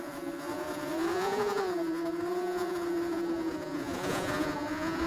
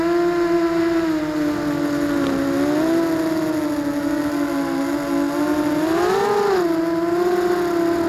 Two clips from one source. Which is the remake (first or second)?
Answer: first